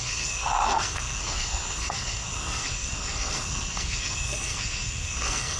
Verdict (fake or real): fake